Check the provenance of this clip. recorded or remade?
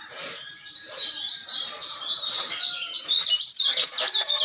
remade